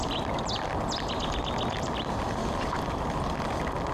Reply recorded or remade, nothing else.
recorded